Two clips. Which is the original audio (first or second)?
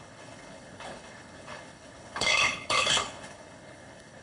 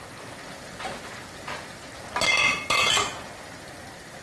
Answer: second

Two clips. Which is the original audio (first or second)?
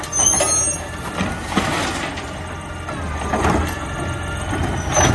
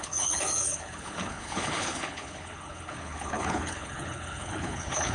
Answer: first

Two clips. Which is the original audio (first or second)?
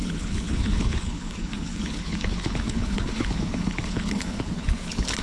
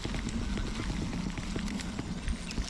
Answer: second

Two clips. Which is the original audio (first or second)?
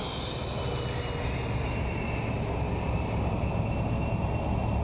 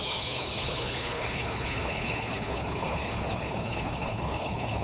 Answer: first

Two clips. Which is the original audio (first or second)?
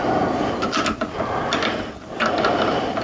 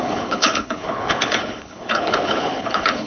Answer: first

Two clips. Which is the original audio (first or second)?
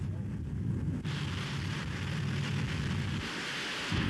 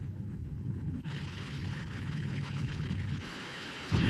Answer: first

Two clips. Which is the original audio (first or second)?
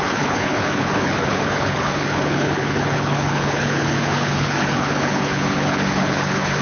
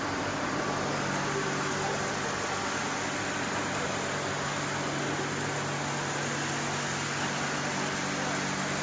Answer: second